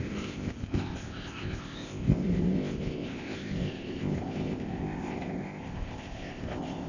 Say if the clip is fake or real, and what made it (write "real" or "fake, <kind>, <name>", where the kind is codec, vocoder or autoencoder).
fake, codec, ZipCodec